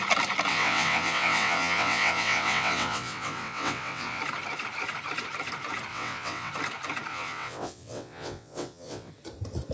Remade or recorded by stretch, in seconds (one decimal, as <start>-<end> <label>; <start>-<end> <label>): 0.0-0.5 recorded; 0.5-4.2 remade; 4.2-5.9 recorded; 5.9-6.5 remade; 6.5-7.1 recorded; 7.1-9.1 remade; 9.1-9.7 recorded

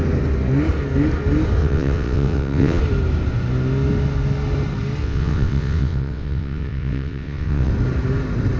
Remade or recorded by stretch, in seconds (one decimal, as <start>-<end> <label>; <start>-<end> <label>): 0.0-1.6 recorded; 1.6-2.8 remade; 2.8-5.0 recorded; 5.0-7.7 remade; 7.7-8.6 recorded